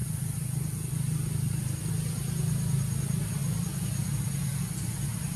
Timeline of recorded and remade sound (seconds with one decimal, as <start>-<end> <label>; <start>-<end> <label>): 0.0-1.9 remade; 1.9-3.4 recorded; 3.4-4.1 remade; 4.1-4.5 recorded; 4.5-5.4 remade